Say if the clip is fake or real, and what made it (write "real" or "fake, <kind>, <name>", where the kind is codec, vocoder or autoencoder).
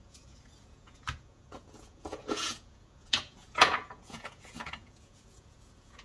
fake, vocoder, Vocos